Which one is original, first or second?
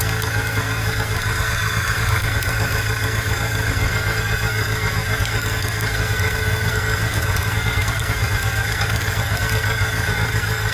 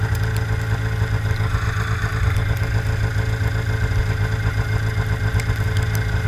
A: second